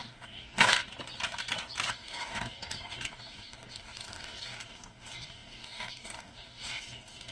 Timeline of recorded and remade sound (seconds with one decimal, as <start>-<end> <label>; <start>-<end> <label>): 0.0-0.8 remade; 0.8-1.9 recorded; 1.9-7.3 remade